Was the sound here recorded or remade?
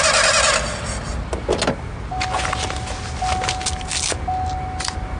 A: recorded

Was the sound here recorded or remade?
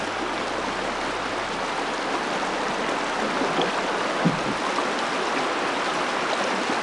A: recorded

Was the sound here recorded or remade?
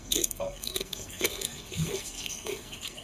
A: remade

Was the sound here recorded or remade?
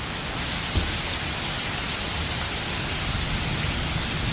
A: recorded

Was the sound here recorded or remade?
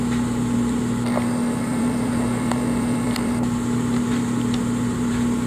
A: remade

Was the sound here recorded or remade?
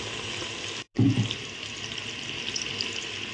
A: recorded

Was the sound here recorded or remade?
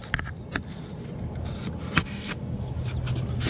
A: recorded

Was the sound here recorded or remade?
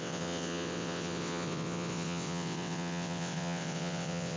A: remade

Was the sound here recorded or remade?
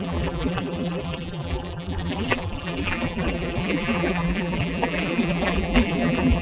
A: remade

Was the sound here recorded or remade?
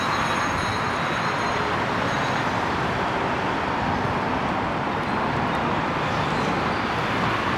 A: recorded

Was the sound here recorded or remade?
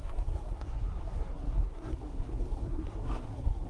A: remade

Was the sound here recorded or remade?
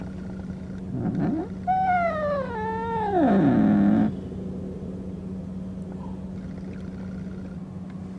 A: recorded